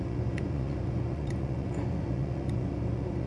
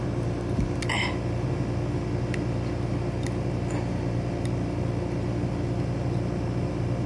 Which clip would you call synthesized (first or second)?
first